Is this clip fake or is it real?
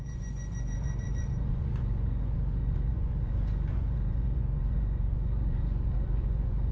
fake